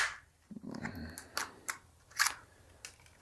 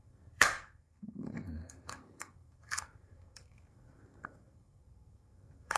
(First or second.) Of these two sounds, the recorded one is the first